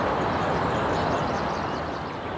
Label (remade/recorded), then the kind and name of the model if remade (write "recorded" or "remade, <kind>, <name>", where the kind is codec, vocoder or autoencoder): recorded